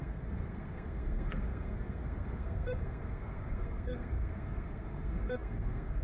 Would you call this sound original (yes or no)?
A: no